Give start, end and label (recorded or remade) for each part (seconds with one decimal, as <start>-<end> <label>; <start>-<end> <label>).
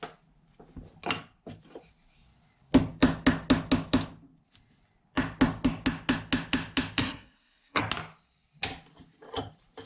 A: 0.0-7.0 recorded; 7.0-7.8 remade; 7.8-9.9 recorded